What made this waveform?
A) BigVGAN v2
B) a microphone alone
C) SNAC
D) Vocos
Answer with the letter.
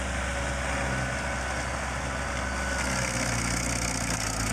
B